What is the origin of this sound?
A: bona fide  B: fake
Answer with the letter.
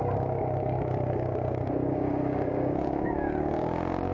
B